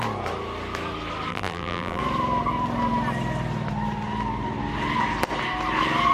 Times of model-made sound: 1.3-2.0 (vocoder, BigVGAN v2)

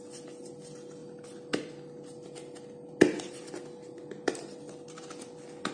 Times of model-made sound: none

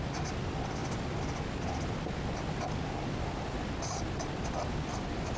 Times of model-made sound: none

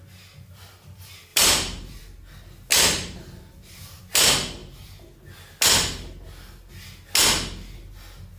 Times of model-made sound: 1.3-2.0 (vocoder, BigVGAN v2); 2.7-4.0

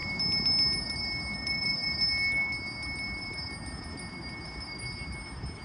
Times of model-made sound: none

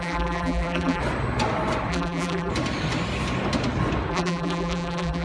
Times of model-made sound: 0.0-1.0 (vocoder, BigVGAN v2); 1.9-2.5; 4.1-5.2

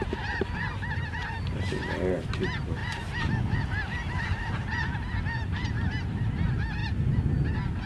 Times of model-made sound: 2.8-5.2 (vocoder, BigVGAN v2)